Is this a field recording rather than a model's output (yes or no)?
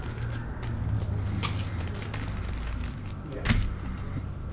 yes